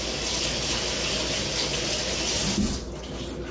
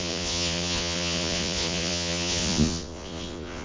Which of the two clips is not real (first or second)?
second